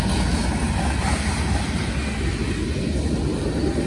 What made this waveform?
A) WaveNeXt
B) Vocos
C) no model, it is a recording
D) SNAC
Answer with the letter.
C